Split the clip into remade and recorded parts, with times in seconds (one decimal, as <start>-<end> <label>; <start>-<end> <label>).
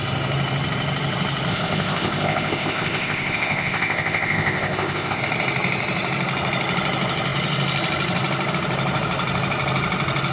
0.0-1.5 recorded; 1.5-5.2 remade; 5.2-10.3 recorded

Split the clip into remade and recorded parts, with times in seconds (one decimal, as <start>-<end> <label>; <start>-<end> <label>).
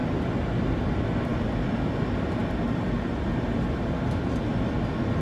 0.0-5.2 recorded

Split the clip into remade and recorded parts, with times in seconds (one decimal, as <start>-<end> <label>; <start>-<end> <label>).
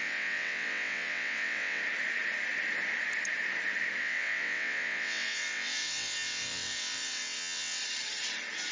0.0-1.8 remade; 1.8-4.0 recorded; 4.0-7.8 remade; 7.8-8.7 recorded